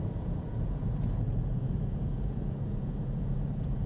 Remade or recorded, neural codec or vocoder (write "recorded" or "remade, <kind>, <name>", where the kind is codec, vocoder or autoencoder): remade, vocoder, Vocos